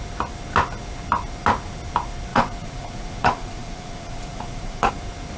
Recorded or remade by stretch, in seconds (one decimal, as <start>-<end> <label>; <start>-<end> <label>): 0.0-2.3 recorded; 2.3-4.9 remade; 4.9-5.4 recorded